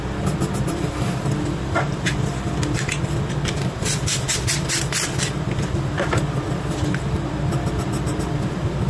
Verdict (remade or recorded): remade